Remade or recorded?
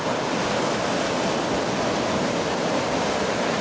recorded